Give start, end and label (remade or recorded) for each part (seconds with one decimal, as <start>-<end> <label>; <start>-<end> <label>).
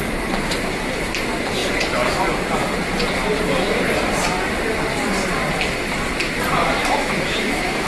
0.0-6.8 recorded; 6.8-7.9 remade